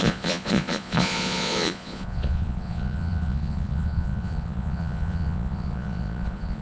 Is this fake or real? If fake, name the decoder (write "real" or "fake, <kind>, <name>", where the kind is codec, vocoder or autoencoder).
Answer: fake, vocoder, Vocos